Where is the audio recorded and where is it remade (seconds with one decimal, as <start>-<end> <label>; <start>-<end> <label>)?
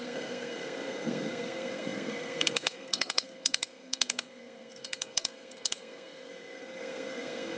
0.0-7.6 remade